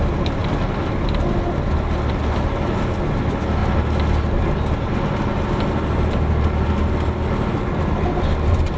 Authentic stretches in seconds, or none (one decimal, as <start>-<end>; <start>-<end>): 0.0-8.8